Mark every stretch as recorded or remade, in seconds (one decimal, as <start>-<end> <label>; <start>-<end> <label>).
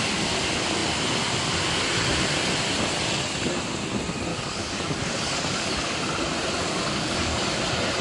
0.0-4.3 recorded; 4.3-6.0 remade; 6.0-6.6 recorded; 6.6-7.6 remade; 7.6-8.0 recorded